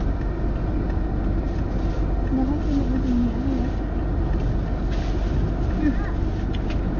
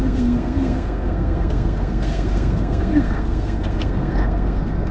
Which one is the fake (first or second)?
second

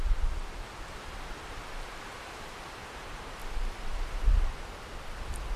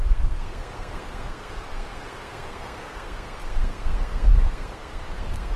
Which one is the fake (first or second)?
second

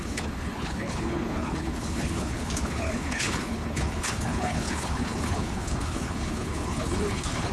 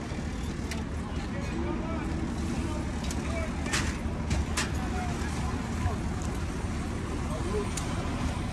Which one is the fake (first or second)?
first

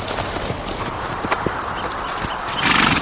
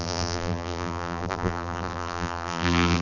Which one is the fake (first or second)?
second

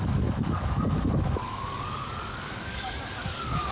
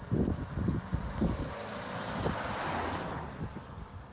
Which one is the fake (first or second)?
first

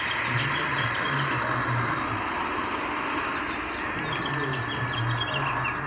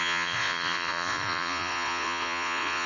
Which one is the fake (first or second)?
second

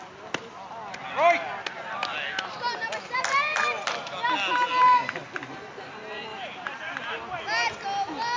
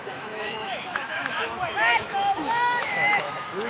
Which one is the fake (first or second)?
second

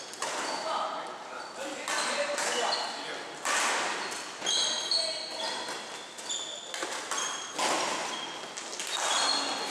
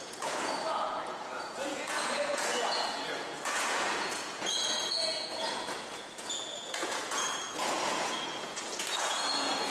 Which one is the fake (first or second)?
second